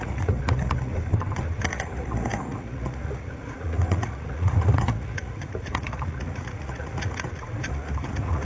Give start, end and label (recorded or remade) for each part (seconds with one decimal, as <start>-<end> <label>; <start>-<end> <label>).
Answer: 0.0-0.9 remade; 0.9-1.7 recorded; 1.7-8.4 remade